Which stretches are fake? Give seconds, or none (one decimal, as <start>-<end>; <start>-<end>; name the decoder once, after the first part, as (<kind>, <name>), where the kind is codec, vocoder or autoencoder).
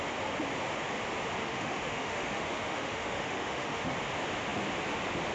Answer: 1.4-3.9 (autoencoder, DAC-VAE)